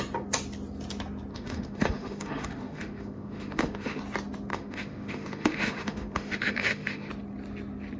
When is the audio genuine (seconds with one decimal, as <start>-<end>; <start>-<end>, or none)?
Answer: 0.0-1.3; 4.0-4.5; 7.1-8.0